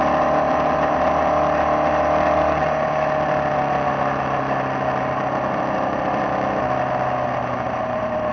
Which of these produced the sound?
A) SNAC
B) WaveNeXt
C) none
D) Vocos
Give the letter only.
C